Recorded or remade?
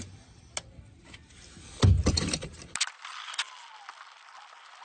recorded